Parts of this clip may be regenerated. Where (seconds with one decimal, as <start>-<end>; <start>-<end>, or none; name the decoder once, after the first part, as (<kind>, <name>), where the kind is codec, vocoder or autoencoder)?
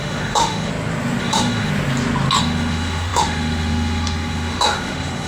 0.0-0.7 (autoencoder, DAC-VAE); 1.2-1.7; 2.4-5.3